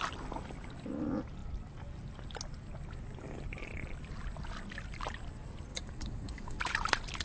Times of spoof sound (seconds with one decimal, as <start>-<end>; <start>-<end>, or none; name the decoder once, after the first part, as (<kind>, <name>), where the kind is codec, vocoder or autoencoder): 5.7-6.6 (codec, DAC)